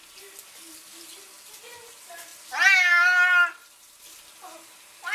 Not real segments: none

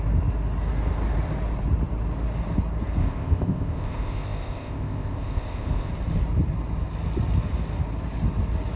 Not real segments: 3.0-5.9 (codec, ZipCodec)

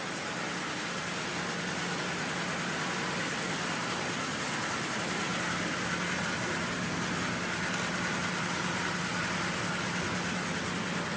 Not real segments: none

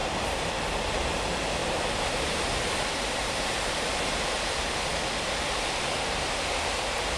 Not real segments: 0.0-0.5 (vocoder, BigVGAN v2); 1.6-5.8

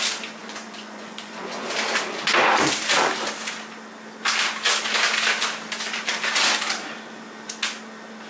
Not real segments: 0.4-1.7 (vocoder, Vocos)

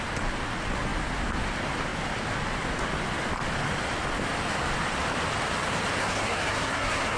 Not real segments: 6.0-7.2 (codec, SNAC)

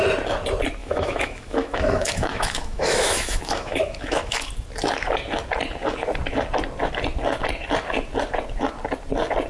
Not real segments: 0.8-4.5 (autoencoder, DAC-VAE)

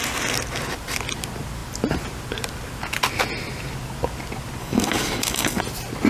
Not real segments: 4.6-5.6 (codec, DAC)